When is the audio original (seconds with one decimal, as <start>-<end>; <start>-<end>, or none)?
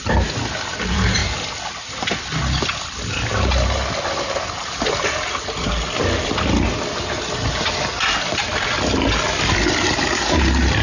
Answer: 0.0-10.8